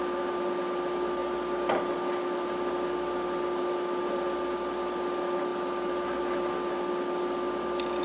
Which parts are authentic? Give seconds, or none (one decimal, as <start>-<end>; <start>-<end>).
0.0-8.0